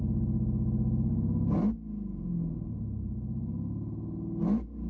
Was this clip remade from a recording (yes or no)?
no